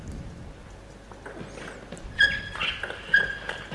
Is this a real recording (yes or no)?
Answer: yes